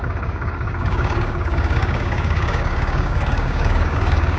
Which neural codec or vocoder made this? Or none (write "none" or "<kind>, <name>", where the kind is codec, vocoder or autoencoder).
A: codec, DAC